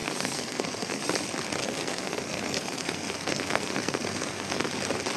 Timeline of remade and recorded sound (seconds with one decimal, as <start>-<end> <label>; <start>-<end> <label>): 0.0-1.0 remade; 1.0-1.6 recorded; 1.6-4.7 remade; 4.7-5.2 recorded